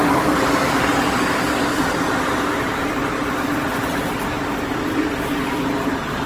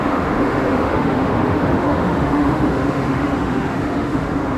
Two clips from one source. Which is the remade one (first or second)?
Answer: second